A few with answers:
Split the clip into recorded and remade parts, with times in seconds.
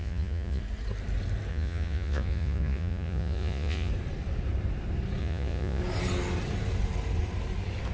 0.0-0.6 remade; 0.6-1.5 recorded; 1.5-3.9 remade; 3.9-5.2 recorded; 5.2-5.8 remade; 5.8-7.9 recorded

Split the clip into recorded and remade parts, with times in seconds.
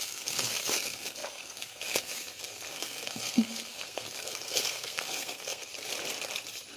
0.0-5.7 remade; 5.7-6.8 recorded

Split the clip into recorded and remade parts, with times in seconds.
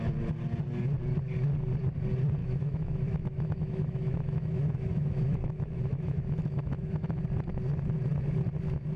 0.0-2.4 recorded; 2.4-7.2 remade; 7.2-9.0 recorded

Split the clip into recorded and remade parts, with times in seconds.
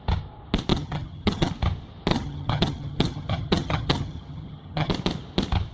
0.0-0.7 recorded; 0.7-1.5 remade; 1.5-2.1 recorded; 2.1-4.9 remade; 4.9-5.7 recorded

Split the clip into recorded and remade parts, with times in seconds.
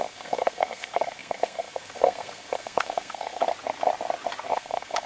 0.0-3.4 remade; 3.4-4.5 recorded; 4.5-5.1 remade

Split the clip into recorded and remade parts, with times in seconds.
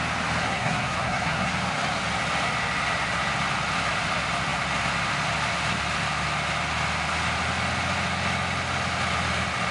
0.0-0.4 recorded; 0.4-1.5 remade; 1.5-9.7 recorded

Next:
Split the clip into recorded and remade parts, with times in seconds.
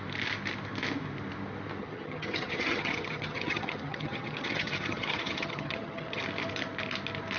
0.0-1.8 recorded; 1.8-6.2 remade; 6.2-7.4 recorded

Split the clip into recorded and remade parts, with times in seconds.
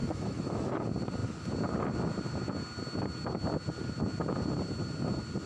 0.0-0.7 remade; 0.7-5.5 recorded